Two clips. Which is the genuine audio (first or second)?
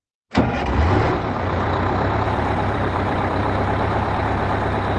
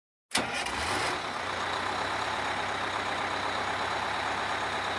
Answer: second